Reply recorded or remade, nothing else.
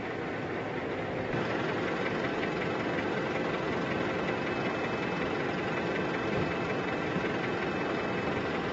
recorded